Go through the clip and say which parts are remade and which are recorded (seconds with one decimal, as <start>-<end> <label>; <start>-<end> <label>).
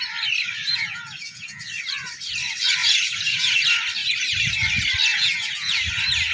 0.0-0.7 recorded; 0.7-1.6 remade; 1.6-2.8 recorded; 2.8-3.6 remade; 3.6-5.1 recorded; 5.1-5.8 remade; 5.8-6.3 recorded